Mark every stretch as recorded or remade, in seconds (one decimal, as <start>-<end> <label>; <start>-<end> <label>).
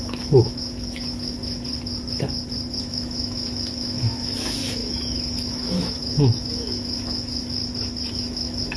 0.0-1.4 remade; 1.4-2.9 recorded; 2.9-7.6 remade; 7.6-8.1 recorded; 8.1-8.8 remade